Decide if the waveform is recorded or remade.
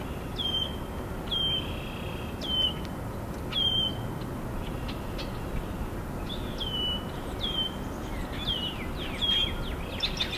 recorded